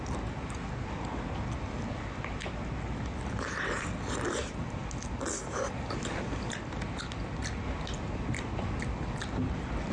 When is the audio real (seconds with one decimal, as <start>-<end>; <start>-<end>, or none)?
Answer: 0.0-9.9